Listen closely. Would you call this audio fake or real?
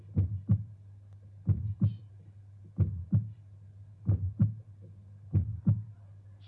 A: real